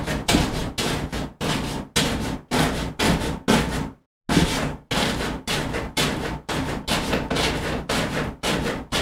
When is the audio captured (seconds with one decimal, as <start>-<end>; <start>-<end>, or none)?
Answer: 0.0-9.0